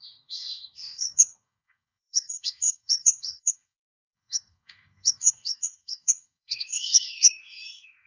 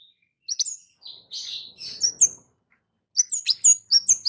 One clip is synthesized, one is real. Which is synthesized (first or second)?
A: first